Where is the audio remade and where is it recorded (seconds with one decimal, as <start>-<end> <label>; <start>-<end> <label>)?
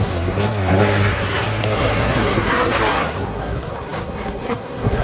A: 0.0-5.0 remade